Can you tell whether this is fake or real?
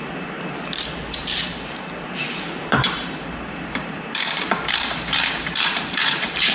fake